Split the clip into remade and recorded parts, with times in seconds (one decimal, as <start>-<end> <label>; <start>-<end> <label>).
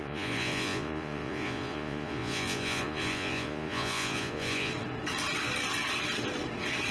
0.0-4.7 remade; 4.7-6.9 recorded